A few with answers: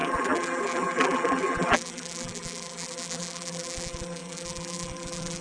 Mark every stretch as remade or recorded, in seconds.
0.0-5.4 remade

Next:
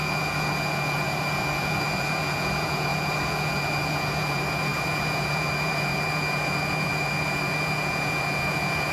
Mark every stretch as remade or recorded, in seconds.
0.0-8.9 remade

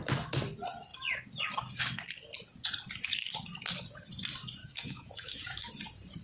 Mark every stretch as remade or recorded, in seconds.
0.0-4.6 recorded; 4.6-5.7 remade; 5.7-6.2 recorded

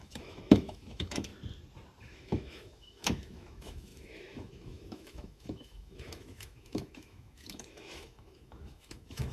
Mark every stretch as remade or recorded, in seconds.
0.0-1.3 remade; 1.3-2.0 recorded; 2.0-9.3 remade

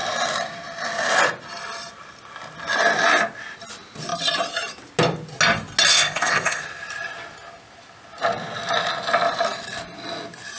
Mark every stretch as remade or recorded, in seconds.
0.0-5.9 recorded; 5.9-6.6 remade; 6.6-10.6 recorded

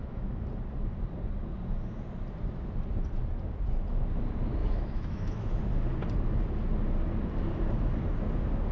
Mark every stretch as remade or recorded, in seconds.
0.0-0.5 remade; 0.5-4.6 recorded; 4.6-5.6 remade; 5.6-8.7 recorded